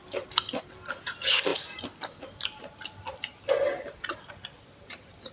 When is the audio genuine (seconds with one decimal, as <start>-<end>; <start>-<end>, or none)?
0.0-5.3